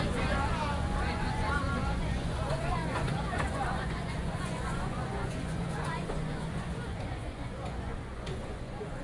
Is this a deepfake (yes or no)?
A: yes